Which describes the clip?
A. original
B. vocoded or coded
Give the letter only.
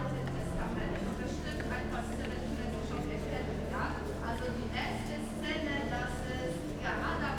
A